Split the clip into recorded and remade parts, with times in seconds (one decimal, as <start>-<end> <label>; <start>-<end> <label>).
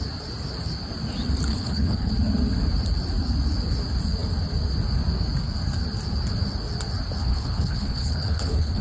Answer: 0.0-1.5 recorded; 1.5-2.1 remade; 2.1-7.2 recorded; 7.2-8.8 remade